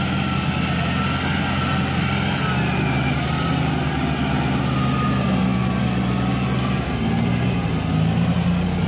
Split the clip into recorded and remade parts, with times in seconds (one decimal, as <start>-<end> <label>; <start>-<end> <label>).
0.0-8.9 recorded